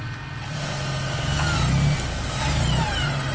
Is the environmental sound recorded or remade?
recorded